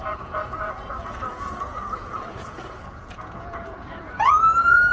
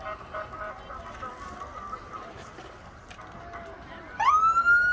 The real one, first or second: second